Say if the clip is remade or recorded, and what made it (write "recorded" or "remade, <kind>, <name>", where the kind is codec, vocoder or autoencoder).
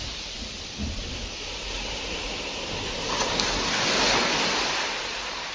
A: recorded